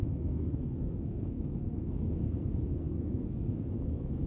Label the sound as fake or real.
fake